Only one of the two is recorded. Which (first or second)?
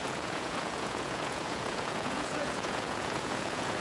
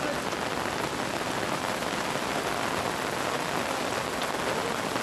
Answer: second